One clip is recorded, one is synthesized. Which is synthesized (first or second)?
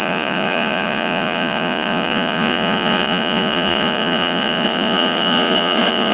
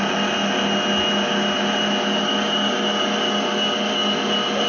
first